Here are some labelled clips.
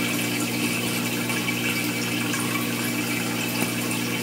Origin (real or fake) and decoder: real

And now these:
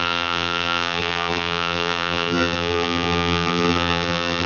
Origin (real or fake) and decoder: fake, vocoder, BigVGAN v2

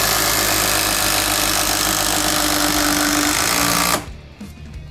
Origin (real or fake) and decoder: real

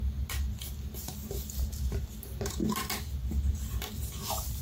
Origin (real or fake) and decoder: real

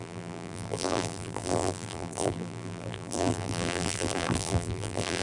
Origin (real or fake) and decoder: fake, vocoder, BigVGAN v2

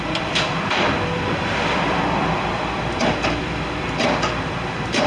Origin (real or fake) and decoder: fake, vocoder, BigVGAN v2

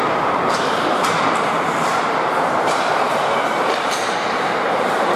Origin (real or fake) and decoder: fake, vocoder, BigVGAN v2